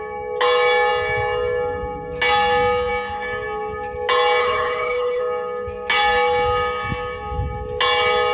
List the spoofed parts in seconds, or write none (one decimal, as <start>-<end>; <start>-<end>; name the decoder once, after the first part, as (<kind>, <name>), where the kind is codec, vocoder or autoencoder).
4.4-5.2 (codec, HILCodec)